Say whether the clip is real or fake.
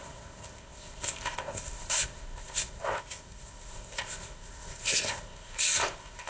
fake